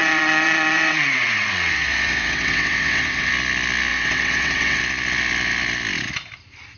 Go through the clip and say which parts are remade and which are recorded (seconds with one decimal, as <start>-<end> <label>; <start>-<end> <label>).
0.0-3.3 remade; 3.3-3.9 recorded; 3.9-4.8 remade; 4.8-6.8 recorded